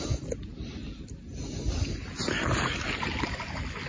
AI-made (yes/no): no